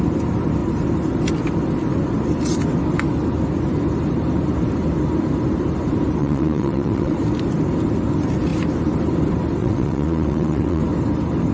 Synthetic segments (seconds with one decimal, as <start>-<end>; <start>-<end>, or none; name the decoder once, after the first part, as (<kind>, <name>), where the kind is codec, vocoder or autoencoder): 6.2-7.1 (vocoder, WaveNeXt); 9.6-10.8